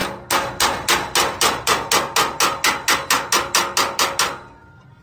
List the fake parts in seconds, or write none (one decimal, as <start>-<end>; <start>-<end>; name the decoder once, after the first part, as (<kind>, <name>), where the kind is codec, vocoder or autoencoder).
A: none